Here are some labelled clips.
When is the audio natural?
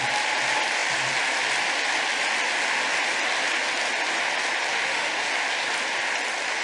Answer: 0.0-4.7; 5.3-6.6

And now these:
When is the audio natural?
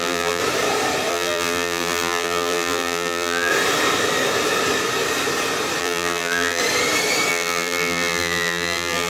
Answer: 0.4-1.1; 3.5-5.8; 6.6-7.3